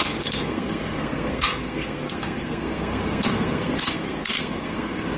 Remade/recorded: remade